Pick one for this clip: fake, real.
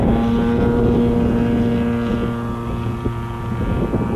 real